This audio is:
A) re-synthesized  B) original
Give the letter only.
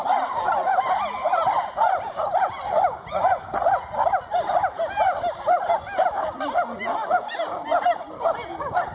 B